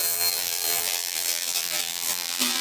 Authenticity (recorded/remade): remade